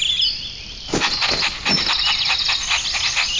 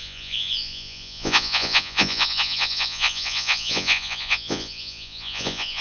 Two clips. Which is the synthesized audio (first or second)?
second